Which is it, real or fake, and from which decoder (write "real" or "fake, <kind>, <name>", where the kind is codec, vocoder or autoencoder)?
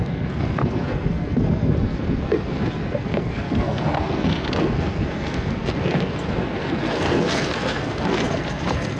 fake, codec, SNAC